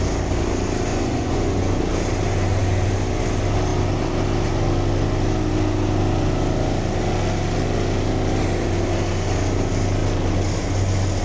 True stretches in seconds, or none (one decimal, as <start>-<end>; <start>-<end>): 0.0-0.9; 1.8-11.2

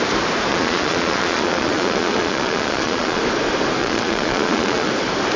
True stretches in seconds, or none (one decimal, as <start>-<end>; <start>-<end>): 0.0-0.5; 3.2-3.8; 4.9-5.4

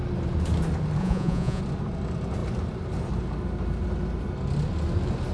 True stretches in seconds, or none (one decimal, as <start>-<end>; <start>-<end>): 0.0-1.0; 1.6-5.3

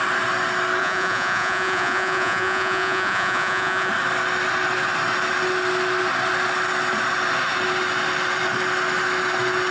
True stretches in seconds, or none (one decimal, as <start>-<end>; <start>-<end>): 0.0-0.8; 3.9-9.7

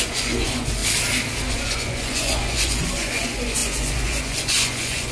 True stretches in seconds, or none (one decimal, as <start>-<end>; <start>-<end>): 0.8-1.5